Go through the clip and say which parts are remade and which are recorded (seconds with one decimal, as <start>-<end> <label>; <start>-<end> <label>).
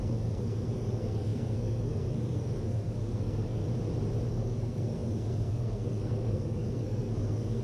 0.0-3.6 remade; 3.6-4.3 recorded; 4.3-7.6 remade